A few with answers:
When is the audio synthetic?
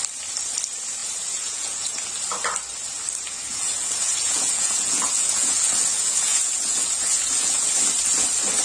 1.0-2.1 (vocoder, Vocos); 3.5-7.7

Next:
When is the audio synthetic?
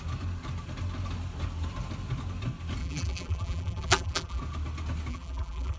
2.8-4.4 (vocoder, BigVGAN v2); 5.1-5.8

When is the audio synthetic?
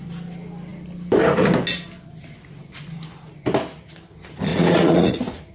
4.5-5.5 (vocoder, Vocos)